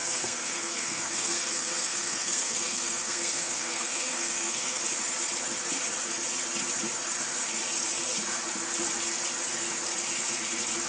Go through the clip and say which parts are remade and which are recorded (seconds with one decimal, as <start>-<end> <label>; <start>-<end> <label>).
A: 0.0-4.8 remade; 4.8-10.9 recorded

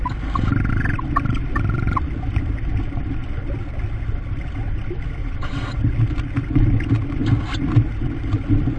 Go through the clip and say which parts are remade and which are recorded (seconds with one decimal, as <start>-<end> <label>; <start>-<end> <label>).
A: 0.0-5.2 recorded; 5.2-5.8 remade; 5.8-8.8 recorded

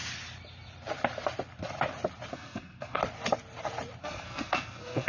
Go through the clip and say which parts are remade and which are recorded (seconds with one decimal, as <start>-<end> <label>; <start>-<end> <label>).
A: 0.0-2.3 recorded; 2.3-3.0 remade; 3.0-4.0 recorded; 4.0-5.1 remade

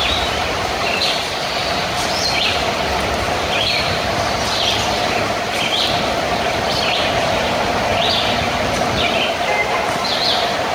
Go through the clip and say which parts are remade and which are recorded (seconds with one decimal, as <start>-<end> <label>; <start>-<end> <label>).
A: 0.0-1.6 remade; 1.6-5.8 recorded; 5.8-7.9 remade; 7.9-9.4 recorded; 9.4-10.7 remade

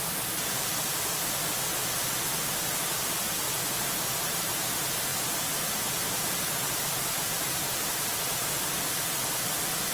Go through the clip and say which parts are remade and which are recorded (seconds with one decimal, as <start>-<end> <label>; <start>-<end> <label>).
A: 0.0-5.1 recorded; 5.1-8.2 remade; 8.2-9.9 recorded

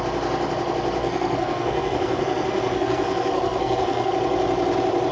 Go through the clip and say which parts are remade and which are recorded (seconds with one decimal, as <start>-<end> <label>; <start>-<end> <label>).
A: 0.0-1.0 recorded; 1.0-4.1 remade; 4.1-5.1 recorded

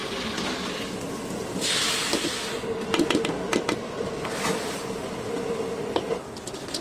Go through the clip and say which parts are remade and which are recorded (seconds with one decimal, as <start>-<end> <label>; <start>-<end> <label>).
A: 0.0-6.8 recorded